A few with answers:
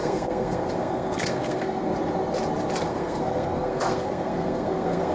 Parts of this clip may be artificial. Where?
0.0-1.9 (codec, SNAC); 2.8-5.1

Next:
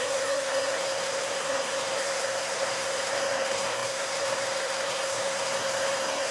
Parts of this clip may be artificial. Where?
0.0-6.3 (codec, SNAC)

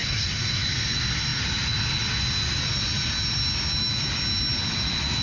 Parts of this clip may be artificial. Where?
0.0-0.6 (codec, SNAC)

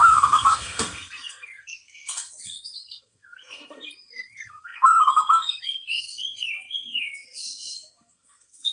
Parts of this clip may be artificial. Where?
0.0-8.7 (codec, SNAC)

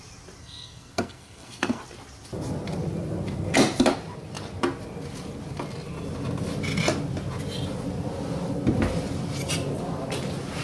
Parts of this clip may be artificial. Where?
0.4-1.8 (codec, SNAC)